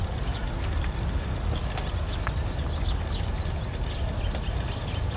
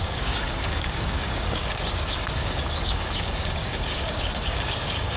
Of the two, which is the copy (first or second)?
second